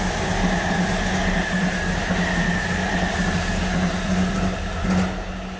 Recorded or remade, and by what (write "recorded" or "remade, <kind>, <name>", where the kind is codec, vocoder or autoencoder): recorded